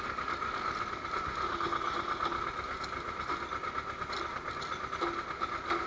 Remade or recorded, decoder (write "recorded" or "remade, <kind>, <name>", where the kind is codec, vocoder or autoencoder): recorded